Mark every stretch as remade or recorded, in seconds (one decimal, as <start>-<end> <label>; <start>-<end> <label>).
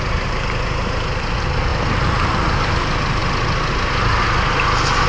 0.0-1.7 recorded; 1.7-2.7 remade; 2.7-5.1 recorded